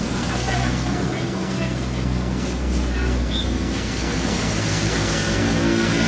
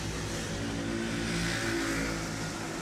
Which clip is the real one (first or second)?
second